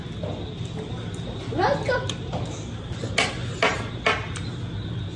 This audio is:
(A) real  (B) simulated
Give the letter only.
A